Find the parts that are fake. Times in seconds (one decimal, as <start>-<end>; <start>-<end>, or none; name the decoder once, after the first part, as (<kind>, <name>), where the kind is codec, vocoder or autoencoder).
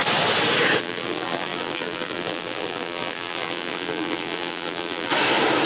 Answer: 0.8-5.1 (vocoder, BigVGAN v2)